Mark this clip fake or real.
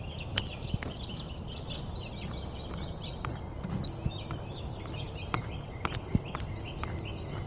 real